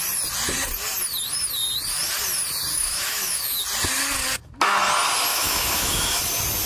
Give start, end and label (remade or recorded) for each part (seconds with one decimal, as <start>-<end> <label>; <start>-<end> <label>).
0.0-2.7 recorded; 2.7-3.6 remade; 3.6-5.3 recorded; 5.3-6.2 remade; 6.2-6.7 recorded